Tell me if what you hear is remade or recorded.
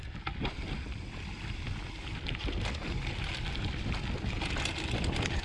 recorded